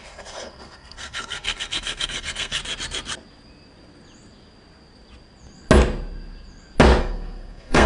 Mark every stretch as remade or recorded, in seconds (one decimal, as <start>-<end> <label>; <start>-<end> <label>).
0.0-2.6 remade; 2.6-7.0 recorded; 7.0-7.9 remade